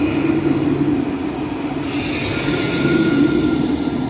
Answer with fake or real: real